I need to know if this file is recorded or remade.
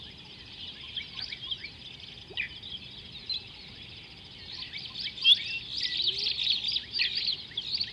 recorded